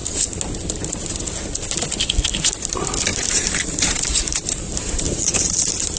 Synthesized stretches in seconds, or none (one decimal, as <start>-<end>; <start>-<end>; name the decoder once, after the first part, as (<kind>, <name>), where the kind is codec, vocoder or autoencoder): 3.1-6.0 (vocoder, BigVGAN v2)